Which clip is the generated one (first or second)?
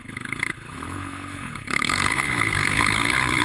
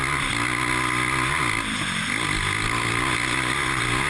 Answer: first